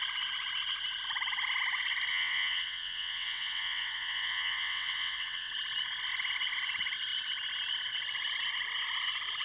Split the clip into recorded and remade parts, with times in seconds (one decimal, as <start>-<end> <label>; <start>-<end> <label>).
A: 0.0-2.1 recorded; 2.1-5.5 remade; 5.5-9.4 recorded